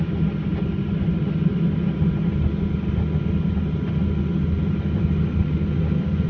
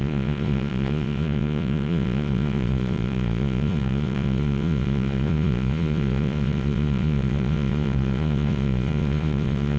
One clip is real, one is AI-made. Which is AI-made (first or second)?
second